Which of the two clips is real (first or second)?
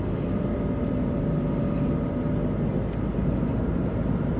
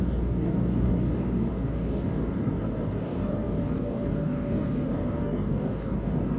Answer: first